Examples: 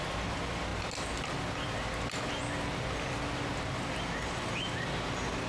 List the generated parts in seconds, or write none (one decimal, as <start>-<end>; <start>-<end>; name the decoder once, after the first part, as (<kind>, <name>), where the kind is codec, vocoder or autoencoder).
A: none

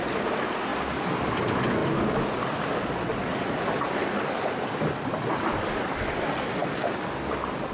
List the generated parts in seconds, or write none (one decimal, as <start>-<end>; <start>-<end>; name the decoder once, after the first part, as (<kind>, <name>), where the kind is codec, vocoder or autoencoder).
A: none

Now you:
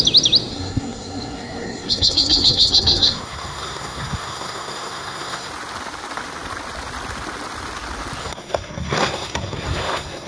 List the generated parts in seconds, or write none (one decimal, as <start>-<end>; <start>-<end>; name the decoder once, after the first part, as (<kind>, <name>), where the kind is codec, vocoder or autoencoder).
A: 0.5-5.5 (codec, SNAC); 8.2-10.3

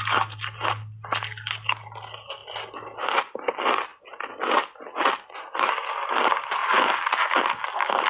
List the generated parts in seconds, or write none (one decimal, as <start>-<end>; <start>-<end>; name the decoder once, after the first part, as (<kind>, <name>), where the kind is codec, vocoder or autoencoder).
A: none